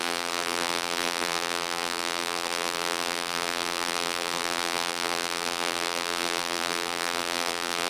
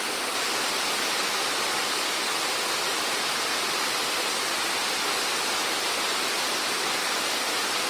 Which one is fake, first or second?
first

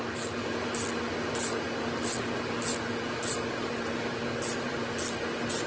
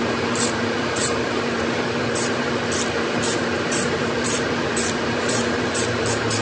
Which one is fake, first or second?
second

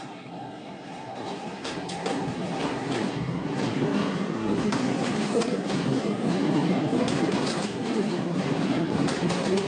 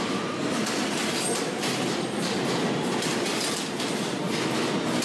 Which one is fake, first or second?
first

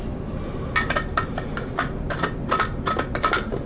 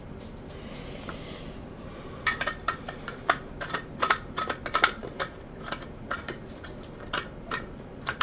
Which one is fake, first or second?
second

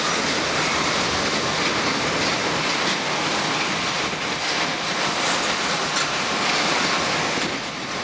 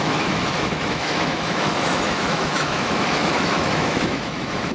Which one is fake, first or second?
second